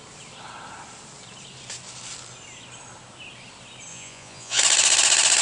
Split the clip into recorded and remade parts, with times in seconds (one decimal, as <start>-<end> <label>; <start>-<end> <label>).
0.0-3.9 recorded; 3.9-4.6 remade; 4.6-5.4 recorded